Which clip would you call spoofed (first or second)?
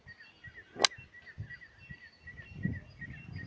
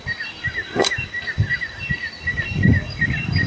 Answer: second